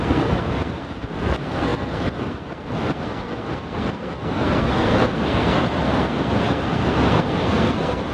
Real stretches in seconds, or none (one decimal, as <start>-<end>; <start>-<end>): none